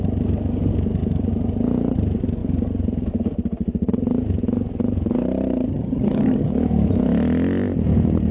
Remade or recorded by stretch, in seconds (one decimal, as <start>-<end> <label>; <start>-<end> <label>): 0.0-5.7 recorded; 5.7-6.5 remade; 6.5-8.3 recorded